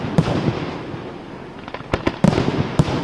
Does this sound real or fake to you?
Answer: real